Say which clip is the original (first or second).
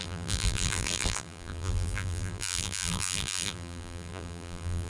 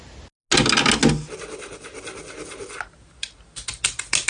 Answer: second